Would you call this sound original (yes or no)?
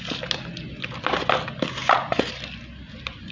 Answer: yes